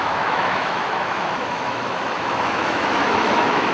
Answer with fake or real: fake